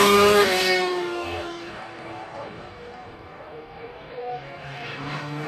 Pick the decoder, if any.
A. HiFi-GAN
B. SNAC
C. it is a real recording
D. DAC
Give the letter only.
D